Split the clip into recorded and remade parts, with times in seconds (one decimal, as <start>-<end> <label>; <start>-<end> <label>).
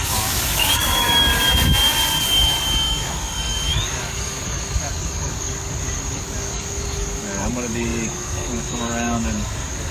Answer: 0.0-1.3 remade; 1.3-2.2 recorded; 2.2-9.9 remade